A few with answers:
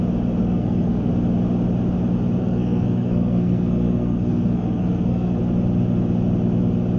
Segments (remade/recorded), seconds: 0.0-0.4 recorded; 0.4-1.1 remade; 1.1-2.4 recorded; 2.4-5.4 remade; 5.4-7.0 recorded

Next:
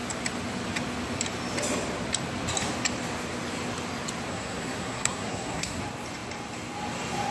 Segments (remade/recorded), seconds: 0.0-4.3 recorded; 4.3-5.8 remade; 5.8-7.3 recorded

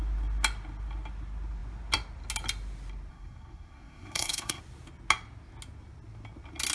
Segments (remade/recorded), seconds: 0.0-3.1 recorded; 3.1-4.6 remade; 4.6-6.7 recorded

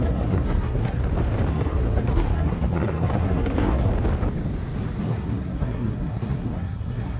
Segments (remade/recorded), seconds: 0.0-1.0 remade; 1.0-1.5 recorded; 1.5-3.9 remade; 3.9-5.0 recorded; 5.0-7.2 remade

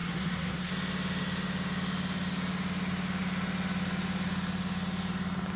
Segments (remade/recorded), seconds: 0.0-0.7 remade; 0.7-5.6 recorded

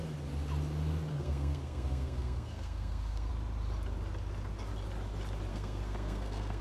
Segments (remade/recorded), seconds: 0.0-1.1 recorded; 1.1-3.3 remade; 3.3-5.5 recorded; 5.5-6.6 remade

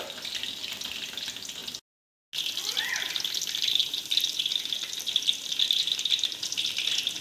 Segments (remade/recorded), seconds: 0.0-7.2 recorded

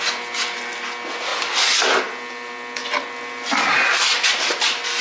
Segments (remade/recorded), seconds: 0.0-5.0 recorded